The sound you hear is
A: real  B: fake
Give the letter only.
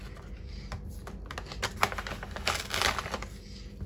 A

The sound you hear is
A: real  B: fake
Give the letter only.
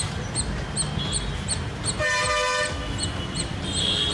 A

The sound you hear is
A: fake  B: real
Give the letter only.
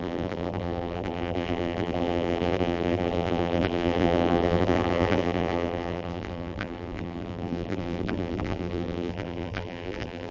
A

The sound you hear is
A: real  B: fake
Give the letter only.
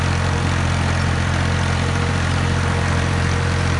B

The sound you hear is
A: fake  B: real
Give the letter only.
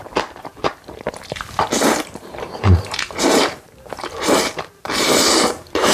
A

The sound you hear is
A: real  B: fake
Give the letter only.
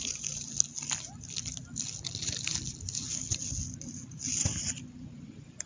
A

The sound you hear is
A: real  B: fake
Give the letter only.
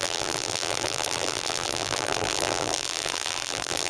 B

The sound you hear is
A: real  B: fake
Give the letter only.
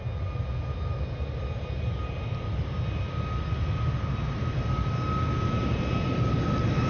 A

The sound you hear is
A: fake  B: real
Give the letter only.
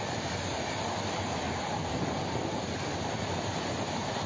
A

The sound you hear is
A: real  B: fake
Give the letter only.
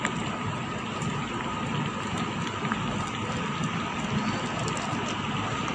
A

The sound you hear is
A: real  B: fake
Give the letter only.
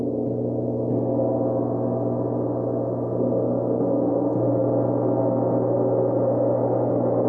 A